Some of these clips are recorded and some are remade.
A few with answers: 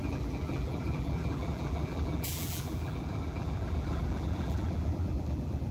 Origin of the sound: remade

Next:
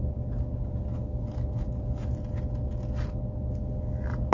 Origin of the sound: recorded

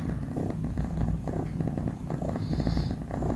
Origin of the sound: recorded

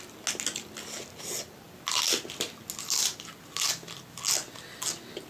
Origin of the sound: recorded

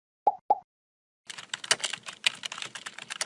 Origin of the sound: recorded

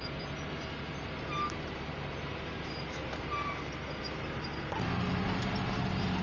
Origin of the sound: recorded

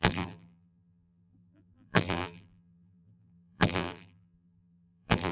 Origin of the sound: remade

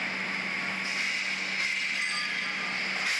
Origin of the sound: recorded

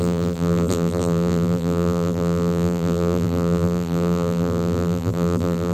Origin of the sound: remade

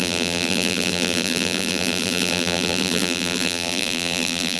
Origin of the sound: remade